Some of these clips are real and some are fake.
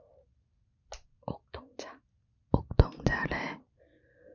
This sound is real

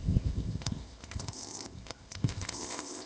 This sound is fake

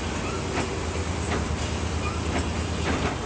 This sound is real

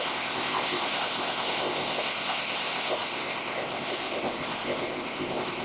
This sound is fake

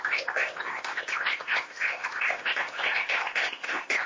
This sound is fake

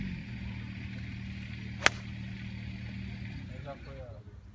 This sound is real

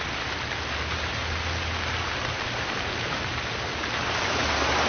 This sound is real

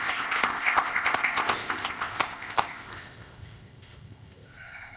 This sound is fake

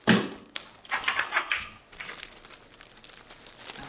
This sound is real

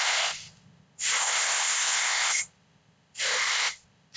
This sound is fake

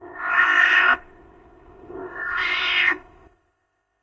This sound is fake